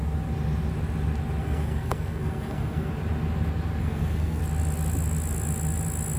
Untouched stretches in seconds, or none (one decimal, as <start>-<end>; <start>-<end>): 0.0-1.4; 2.9-3.8; 4.4-6.2